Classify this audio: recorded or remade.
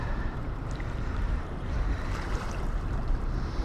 remade